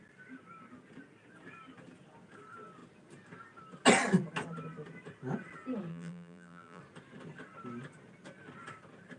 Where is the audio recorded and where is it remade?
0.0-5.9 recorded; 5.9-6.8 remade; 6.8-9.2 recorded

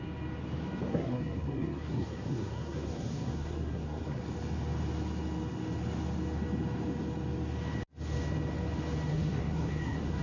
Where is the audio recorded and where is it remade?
0.0-0.9 recorded; 0.9-4.2 remade; 4.2-9.1 recorded; 9.1-10.2 remade

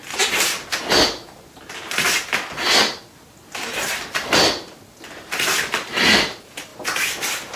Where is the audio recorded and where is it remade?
0.0-7.6 recorded

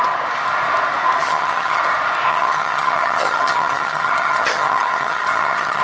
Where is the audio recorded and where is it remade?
0.0-1.2 recorded; 1.2-1.8 remade; 1.8-2.3 recorded; 2.3-5.8 remade

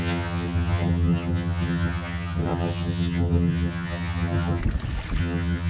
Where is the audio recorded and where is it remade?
0.0-4.6 remade; 4.6-5.2 recorded; 5.2-5.7 remade